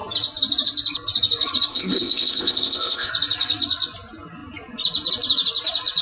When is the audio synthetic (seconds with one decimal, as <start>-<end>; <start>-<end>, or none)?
1.7-3.1